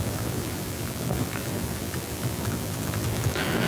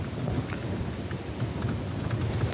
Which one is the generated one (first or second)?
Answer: first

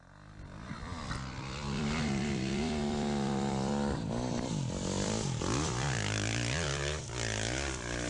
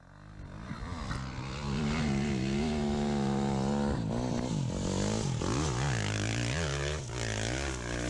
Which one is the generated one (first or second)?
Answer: first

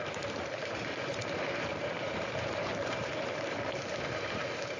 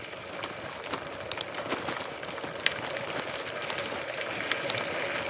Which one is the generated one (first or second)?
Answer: first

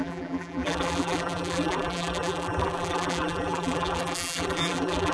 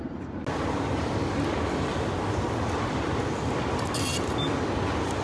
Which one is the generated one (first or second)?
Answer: first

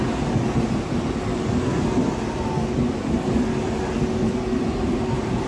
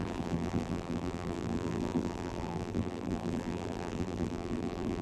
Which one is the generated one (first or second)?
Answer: second